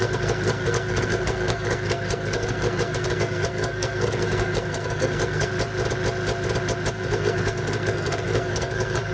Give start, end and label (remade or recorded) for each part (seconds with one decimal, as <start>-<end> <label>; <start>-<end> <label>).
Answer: 0.0-5.5 remade; 5.5-6.9 recorded; 6.9-9.1 remade